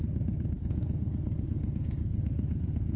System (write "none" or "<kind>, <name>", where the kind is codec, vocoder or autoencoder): codec, SNAC